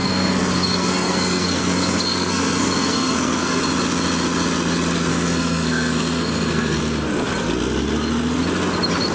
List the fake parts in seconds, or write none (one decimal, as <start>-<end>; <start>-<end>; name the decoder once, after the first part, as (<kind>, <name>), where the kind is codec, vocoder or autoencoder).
0.0-3.6 (codec, SNAC); 5.1-6.8